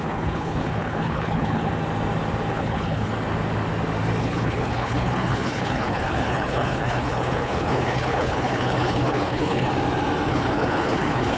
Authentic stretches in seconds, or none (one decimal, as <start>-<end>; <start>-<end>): 1.7-2.5; 3.1-4.2; 9.7-10.3